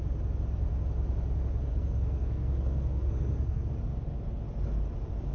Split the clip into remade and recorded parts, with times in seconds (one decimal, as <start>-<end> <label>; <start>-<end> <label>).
0.0-1.7 recorded; 1.7-3.7 remade; 3.7-5.3 recorded